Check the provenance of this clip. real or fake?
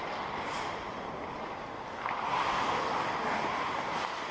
real